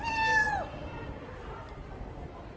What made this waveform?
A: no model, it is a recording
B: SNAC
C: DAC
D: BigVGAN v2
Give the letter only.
A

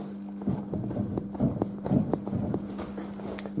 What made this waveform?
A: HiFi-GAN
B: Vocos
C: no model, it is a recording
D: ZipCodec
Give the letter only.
C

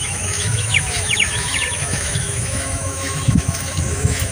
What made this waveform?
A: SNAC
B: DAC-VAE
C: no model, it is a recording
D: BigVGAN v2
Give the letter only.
B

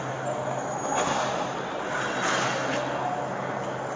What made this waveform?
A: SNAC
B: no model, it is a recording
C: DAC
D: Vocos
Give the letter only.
B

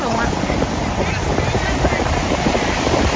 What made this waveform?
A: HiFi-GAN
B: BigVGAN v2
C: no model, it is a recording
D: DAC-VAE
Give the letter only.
C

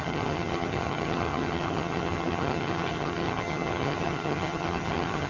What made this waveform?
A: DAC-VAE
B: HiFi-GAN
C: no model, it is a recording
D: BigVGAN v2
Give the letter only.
B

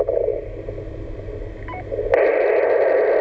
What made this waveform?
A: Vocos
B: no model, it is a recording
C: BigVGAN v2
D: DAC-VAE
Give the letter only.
B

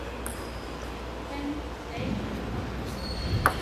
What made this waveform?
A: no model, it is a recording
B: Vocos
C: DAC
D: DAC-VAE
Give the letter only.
A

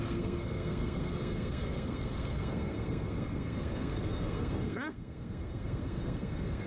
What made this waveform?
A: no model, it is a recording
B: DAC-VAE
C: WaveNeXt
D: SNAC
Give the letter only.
D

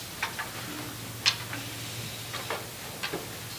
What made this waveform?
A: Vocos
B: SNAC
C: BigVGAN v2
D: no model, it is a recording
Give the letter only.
D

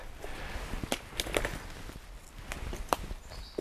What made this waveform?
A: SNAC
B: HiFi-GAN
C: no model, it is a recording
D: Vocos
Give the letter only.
C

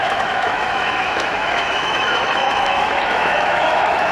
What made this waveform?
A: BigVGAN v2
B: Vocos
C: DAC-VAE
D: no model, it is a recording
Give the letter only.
C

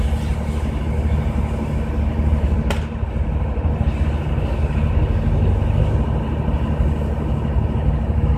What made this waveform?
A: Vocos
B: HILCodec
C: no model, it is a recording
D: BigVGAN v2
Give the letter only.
C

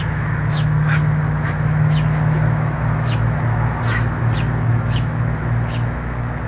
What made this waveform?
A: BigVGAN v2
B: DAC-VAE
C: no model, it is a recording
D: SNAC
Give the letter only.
B